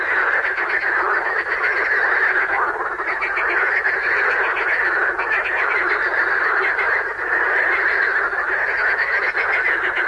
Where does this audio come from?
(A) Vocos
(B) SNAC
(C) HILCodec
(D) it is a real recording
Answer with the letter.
D